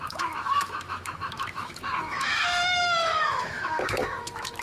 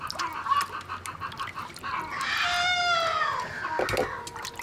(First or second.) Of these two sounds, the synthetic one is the first